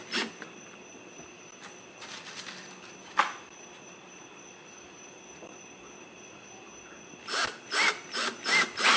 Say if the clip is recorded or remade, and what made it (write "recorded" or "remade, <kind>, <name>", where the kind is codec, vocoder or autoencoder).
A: recorded